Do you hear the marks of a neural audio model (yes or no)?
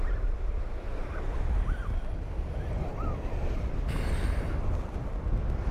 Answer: no